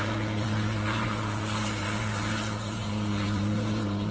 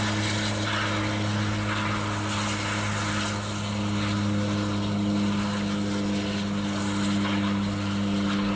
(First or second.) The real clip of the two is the second